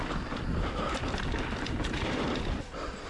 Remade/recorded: recorded